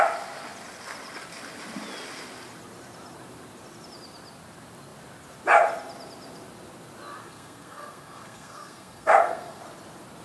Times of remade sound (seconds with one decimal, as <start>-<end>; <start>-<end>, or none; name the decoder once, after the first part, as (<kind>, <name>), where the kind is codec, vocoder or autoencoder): 7.2-9.6 (codec, SNAC)